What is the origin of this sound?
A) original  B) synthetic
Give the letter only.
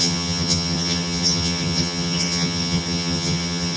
B